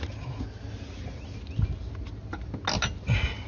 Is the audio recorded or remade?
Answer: recorded